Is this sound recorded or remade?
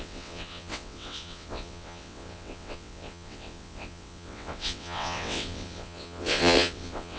remade